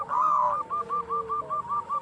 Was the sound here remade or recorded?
recorded